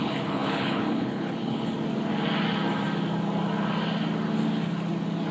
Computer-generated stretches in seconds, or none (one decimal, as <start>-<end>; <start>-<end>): 0.0-1.7